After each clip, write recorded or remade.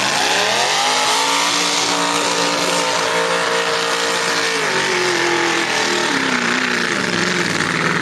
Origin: recorded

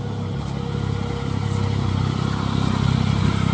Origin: recorded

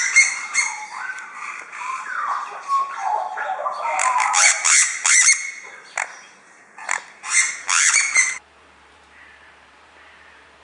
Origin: remade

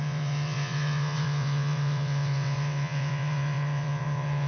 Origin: remade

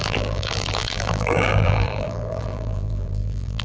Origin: remade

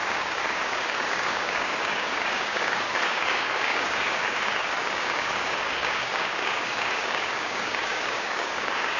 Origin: remade